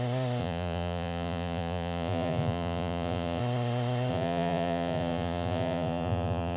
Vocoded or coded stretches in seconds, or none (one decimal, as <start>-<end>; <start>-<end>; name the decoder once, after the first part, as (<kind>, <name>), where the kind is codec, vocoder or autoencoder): 0.4-3.4 (vocoder, Vocos); 4.1-6.6